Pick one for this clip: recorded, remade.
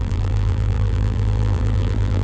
remade